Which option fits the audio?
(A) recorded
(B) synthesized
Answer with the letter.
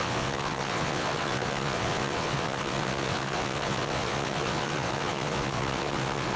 B